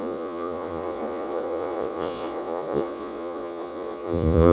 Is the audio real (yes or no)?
no